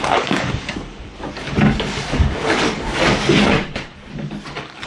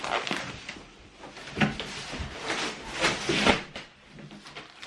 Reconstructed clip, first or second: first